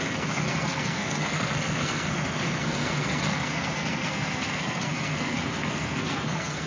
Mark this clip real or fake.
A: fake